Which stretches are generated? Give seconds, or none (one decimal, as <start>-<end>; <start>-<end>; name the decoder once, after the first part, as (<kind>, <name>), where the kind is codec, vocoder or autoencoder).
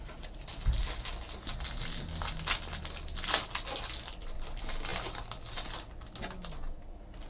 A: none